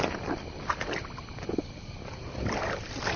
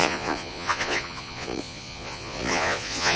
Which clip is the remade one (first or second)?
second